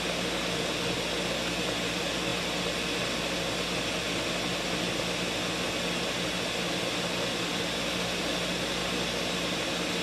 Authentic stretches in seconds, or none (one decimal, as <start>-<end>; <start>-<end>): 0.0-10.0